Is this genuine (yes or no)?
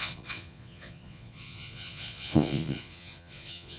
no